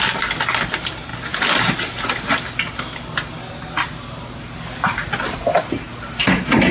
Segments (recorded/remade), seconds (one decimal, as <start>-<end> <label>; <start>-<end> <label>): 0.0-6.7 recorded